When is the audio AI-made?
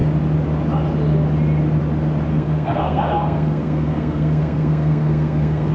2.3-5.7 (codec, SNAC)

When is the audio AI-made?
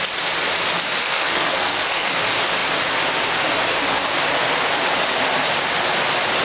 1.0-2.1 (codec, SNAC)